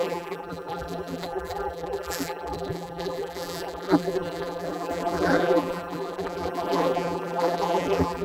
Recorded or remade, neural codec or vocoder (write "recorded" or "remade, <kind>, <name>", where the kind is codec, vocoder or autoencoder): remade, vocoder, BigVGAN v2